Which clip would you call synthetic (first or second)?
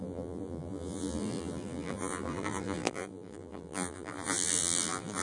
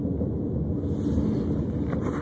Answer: first